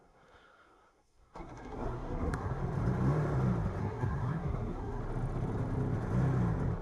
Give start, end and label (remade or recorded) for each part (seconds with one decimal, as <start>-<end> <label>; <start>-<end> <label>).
0.0-2.6 remade; 2.6-3.8 recorded; 3.8-5.0 remade; 5.0-6.8 recorded